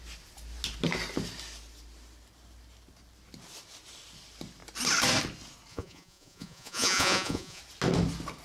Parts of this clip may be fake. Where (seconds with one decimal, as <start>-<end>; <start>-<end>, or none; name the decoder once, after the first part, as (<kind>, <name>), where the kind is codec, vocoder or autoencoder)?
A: 5.7-7.6 (vocoder, Vocos)